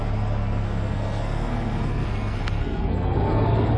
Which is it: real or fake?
fake